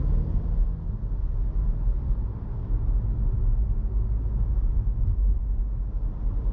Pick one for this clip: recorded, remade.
recorded